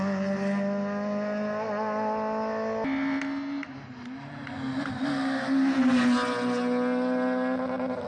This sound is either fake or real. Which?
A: real